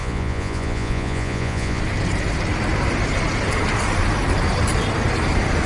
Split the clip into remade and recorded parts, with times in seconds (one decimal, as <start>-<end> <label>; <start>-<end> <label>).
0.0-1.8 remade; 1.8-5.7 recorded